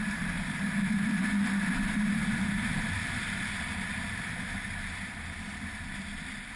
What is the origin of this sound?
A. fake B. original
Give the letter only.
A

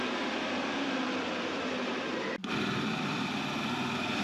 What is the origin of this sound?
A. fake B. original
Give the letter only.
A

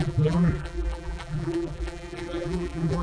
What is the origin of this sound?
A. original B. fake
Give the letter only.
B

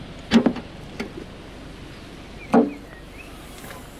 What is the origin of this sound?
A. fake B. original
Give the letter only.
B